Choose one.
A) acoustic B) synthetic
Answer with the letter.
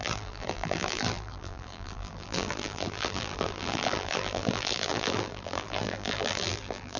B